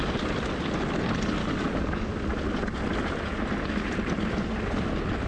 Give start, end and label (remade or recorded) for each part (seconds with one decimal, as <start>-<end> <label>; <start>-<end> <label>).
0.0-1.4 recorded; 1.4-2.1 remade; 2.1-5.3 recorded